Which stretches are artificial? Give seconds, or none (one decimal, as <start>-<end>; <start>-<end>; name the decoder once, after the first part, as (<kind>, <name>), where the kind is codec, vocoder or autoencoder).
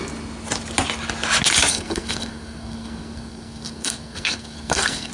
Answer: 1.7-5.1 (codec, SNAC)